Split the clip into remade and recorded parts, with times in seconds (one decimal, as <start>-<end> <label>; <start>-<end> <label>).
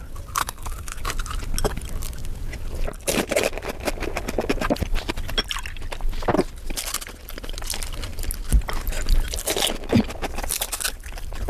0.0-0.4 recorded; 0.4-1.0 remade; 1.0-11.5 recorded